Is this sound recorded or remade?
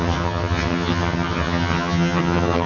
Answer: remade